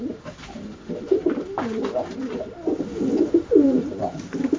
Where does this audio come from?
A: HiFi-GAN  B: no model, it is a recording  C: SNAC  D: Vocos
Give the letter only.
B